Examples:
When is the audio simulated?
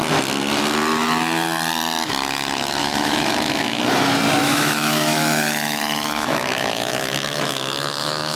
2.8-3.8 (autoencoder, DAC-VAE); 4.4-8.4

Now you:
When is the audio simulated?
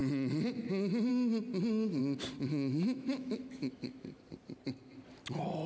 2.5-4.2 (autoencoder, DAC-VAE)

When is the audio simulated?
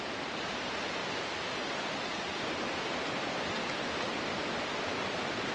none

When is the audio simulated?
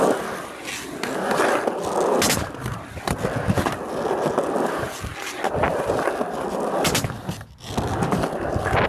none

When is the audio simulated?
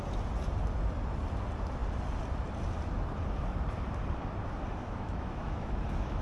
4.8-6.2 (autoencoder, DAC-VAE)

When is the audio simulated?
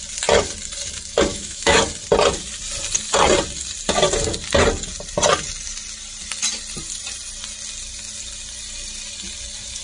1.3-1.8 (autoencoder, DAC-VAE)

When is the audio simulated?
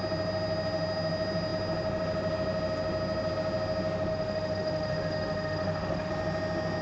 4.1-6.1 (autoencoder, DAC-VAE)